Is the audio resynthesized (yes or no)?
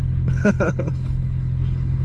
yes